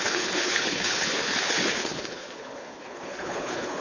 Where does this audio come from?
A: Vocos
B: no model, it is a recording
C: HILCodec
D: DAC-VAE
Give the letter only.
C